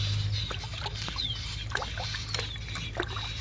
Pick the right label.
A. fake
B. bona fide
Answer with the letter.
B